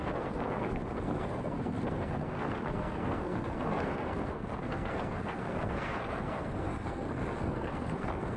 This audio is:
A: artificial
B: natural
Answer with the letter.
A